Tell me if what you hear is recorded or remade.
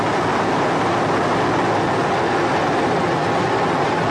recorded